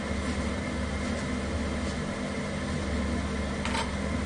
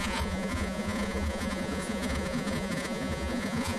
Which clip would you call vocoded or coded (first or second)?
second